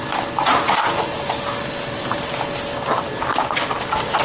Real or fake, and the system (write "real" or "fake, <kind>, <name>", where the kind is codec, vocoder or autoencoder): real